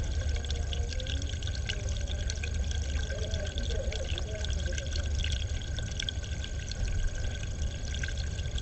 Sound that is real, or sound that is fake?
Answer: real